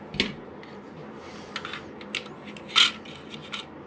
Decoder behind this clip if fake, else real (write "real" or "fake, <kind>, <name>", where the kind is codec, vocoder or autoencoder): real